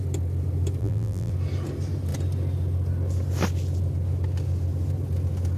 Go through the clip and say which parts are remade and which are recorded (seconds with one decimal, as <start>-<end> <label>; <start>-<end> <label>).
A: 0.0-0.8 recorded; 0.8-1.3 remade; 1.3-5.6 recorded